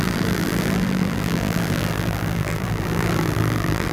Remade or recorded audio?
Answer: remade